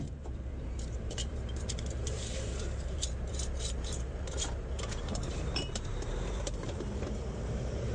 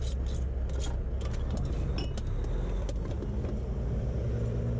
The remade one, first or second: first